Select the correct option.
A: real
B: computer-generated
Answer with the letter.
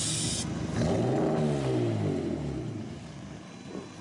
A